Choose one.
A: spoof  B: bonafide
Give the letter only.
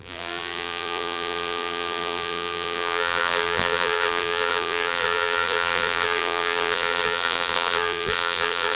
A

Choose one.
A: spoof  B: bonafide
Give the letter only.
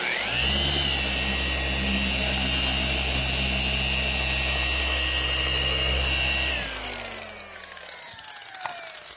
B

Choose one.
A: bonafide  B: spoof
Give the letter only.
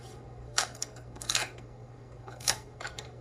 B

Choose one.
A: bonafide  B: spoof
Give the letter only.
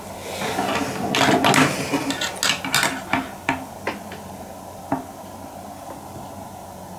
A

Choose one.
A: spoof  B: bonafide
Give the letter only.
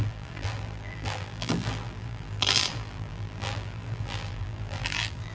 A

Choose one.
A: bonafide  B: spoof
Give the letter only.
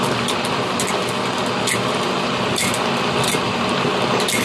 A